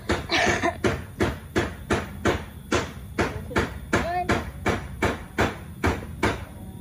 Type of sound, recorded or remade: recorded